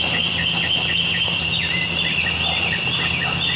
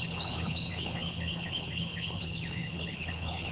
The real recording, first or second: first